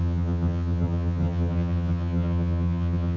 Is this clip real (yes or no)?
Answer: no